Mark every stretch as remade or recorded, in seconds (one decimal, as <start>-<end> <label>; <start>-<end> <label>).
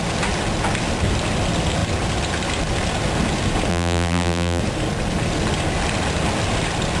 0.0-3.7 recorded; 3.7-4.6 remade; 4.6-7.0 recorded